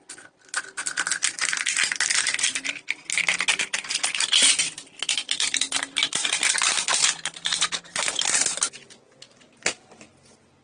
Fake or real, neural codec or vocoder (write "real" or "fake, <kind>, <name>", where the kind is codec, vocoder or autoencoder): real